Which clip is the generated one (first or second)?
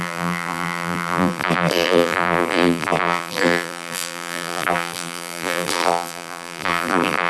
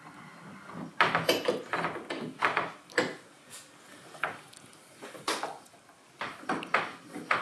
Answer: first